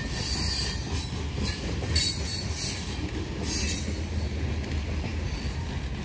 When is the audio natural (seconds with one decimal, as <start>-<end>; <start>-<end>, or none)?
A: 0.0-6.0